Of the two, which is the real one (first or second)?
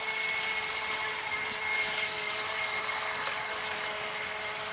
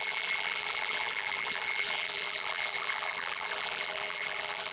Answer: first